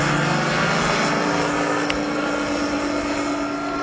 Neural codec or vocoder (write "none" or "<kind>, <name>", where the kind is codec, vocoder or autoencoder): none